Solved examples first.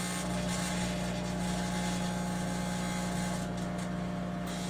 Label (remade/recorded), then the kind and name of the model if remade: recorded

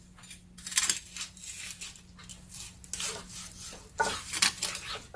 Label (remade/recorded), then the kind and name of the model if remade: recorded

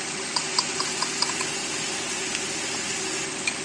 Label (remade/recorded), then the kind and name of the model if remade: recorded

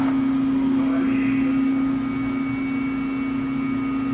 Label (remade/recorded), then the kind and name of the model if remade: recorded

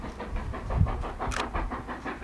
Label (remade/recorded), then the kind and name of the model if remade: recorded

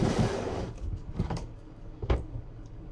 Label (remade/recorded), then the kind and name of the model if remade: remade, codec, DAC